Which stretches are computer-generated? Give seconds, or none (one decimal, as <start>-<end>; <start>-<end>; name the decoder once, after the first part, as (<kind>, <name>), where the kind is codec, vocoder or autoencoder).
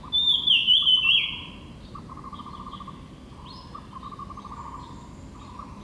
none